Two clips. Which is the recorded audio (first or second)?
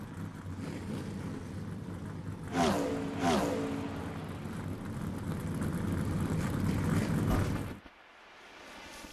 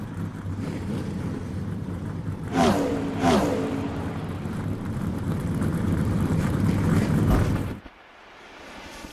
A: first